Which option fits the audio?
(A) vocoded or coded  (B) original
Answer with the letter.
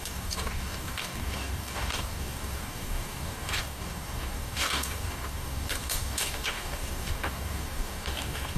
A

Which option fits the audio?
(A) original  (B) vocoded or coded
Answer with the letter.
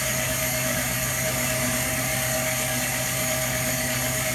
B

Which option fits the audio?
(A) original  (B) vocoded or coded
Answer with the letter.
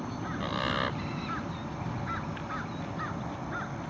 A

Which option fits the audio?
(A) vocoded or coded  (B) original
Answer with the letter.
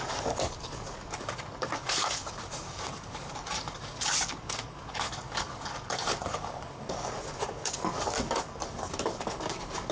A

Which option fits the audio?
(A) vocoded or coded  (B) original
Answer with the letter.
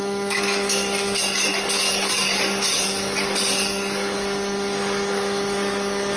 A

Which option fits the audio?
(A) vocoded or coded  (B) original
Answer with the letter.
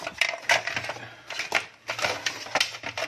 B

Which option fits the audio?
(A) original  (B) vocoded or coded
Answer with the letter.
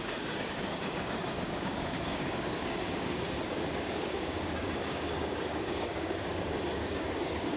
B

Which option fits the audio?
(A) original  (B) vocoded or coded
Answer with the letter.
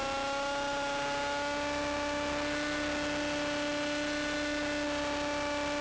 A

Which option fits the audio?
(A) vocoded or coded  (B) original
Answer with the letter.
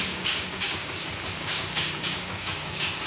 A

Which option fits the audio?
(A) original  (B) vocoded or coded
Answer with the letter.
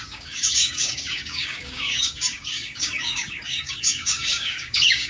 B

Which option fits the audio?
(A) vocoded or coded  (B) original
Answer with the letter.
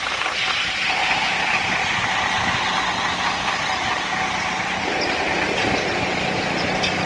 B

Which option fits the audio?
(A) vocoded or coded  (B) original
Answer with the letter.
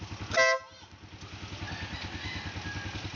B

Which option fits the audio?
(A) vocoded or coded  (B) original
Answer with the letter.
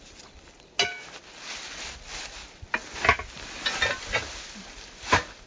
B